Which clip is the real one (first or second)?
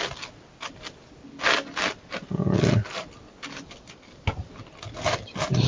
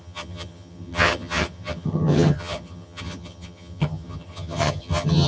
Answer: first